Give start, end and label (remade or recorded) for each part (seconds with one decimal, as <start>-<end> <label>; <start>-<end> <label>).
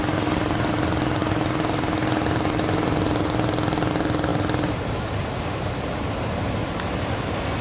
0.0-7.6 recorded